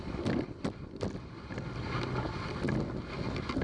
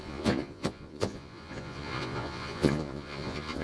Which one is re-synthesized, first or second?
second